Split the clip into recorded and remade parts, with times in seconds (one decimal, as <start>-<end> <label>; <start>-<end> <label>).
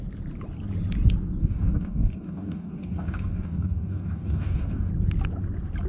0.0-1.4 recorded; 1.4-4.9 remade; 4.9-5.9 recorded